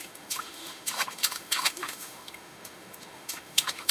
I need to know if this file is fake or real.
fake